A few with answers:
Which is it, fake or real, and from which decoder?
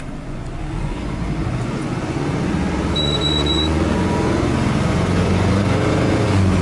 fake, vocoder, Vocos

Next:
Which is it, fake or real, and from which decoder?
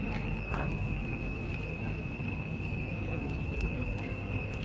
fake, codec, SNAC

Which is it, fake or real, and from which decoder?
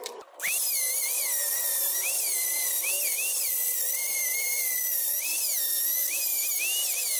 fake, vocoder, BigVGAN v2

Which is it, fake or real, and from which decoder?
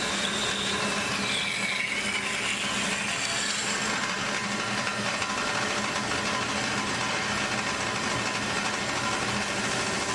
real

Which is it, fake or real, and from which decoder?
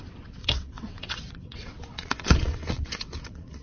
fake, vocoder, WaveNeXt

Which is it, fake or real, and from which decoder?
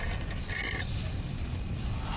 real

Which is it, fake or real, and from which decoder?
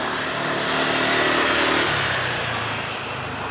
real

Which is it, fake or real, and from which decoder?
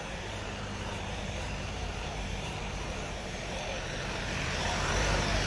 fake, vocoder, BigVGAN v2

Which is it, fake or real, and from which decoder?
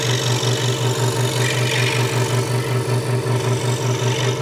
real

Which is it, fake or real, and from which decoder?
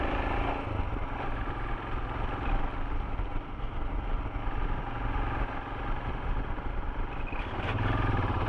real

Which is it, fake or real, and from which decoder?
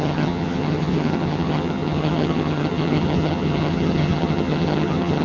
fake, vocoder, HiFi-GAN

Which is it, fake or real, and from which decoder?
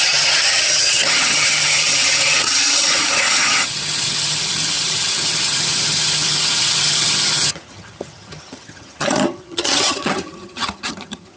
fake, vocoder, HiFi-GAN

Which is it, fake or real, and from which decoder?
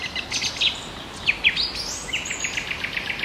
real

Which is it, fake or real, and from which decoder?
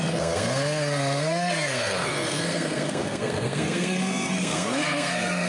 fake, codec, SNAC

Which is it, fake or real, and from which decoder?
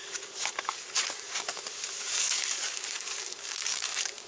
fake, codec, DAC